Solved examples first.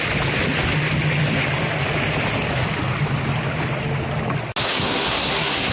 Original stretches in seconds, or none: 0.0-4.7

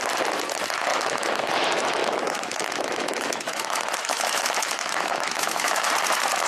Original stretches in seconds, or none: 0.0-0.9; 1.5-2.0; 5.9-6.5

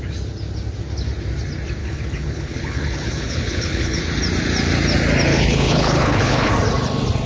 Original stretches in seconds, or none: 0.0-1.8; 4.0-5.3; 6.5-7.3

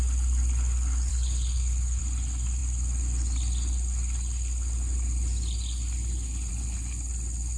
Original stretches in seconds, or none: 0.0-1.1; 2.0-7.6